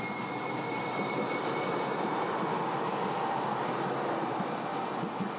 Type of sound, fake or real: real